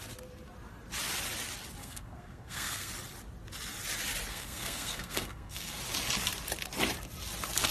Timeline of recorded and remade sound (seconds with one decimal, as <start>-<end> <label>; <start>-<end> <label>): 0.0-1.8 recorded; 1.8-2.9 remade; 2.9-4.3 recorded; 4.3-5.8 remade; 5.8-7.7 recorded